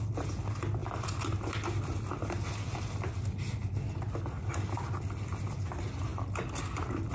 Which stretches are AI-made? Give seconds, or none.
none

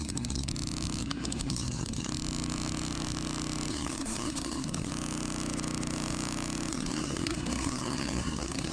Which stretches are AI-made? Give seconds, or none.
0.0-0.5 (codec, SNAC); 1.0-2.1; 3.7-4.9; 6.7-8.7

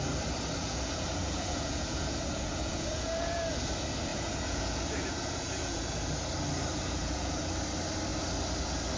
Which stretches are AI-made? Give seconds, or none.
0.6-3.6 (vocoder, Vocos); 4.1-6.1; 6.7-7.5

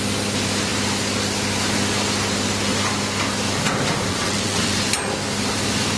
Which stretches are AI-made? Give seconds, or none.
4.1-4.7 (vocoder, WaveNeXt)